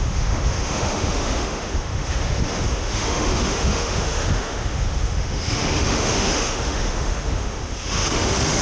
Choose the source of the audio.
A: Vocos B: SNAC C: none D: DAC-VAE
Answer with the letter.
D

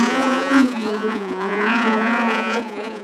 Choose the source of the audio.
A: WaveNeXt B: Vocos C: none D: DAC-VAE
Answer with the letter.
B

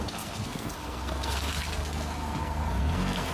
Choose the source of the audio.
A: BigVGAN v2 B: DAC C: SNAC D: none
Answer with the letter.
C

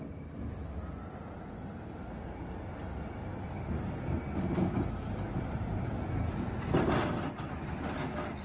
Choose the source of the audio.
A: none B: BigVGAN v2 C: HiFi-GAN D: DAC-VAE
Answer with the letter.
A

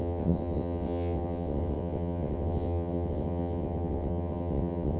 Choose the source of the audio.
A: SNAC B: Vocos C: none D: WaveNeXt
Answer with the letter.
D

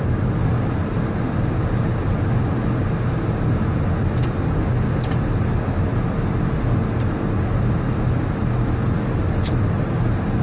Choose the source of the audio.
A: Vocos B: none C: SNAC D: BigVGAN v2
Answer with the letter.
B